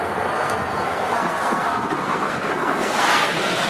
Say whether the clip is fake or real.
fake